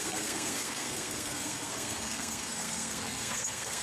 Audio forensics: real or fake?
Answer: fake